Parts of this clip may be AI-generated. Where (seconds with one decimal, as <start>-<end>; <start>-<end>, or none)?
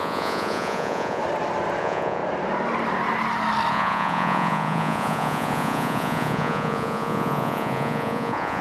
0.0-1.2; 1.8-2.2; 3.7-8.6